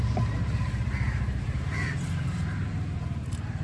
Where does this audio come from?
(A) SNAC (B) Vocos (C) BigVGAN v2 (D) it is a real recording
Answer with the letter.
C